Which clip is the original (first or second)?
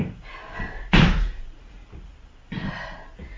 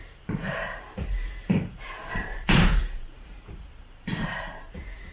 first